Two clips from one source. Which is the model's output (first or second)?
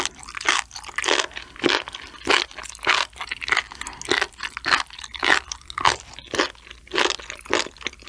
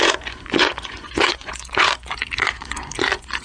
second